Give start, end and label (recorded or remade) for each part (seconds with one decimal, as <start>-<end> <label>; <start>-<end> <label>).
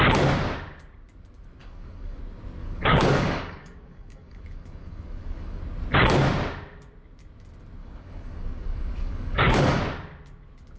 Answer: 0.0-1.6 recorded; 1.6-2.2 remade; 2.2-2.6 recorded; 2.6-5.6 remade; 5.6-7.8 recorded; 7.8-9.8 remade; 9.8-10.8 recorded